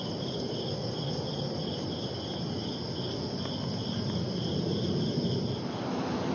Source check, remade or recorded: recorded